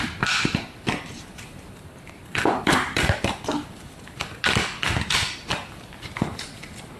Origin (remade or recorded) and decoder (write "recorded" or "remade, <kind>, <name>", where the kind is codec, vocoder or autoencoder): remade, vocoder, BigVGAN v2